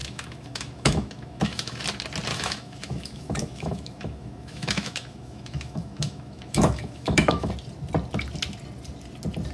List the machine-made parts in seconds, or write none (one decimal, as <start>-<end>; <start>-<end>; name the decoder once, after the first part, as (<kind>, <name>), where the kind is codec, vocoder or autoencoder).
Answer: 0.0-1.8 (autoencoder, DAC-VAE); 2.3-7.5